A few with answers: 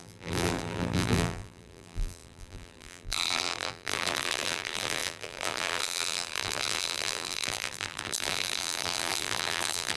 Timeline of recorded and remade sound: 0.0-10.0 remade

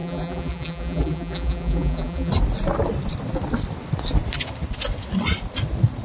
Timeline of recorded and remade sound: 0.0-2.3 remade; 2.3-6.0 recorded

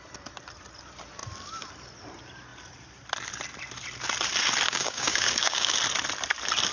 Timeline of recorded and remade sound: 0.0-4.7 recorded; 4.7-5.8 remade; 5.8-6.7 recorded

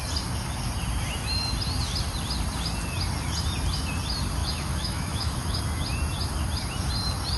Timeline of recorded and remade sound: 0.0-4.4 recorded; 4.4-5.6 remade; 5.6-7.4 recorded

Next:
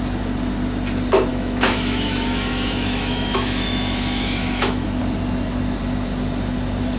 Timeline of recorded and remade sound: 0.0-1.3 recorded; 1.3-5.0 remade; 5.0-7.0 recorded

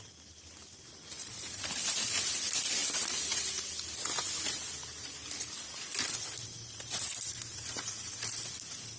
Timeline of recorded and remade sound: 0.0-9.0 recorded